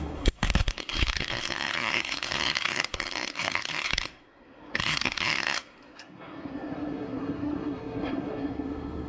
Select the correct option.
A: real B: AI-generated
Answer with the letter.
B